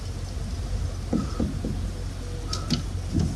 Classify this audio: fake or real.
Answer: real